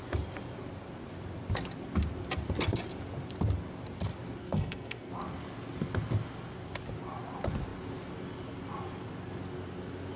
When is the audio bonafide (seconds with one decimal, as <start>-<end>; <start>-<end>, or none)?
0.0-4.4; 5.1-10.2